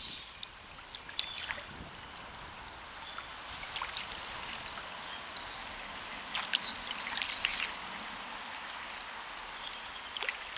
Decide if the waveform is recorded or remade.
recorded